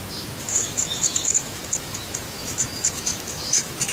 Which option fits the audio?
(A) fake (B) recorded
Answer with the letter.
A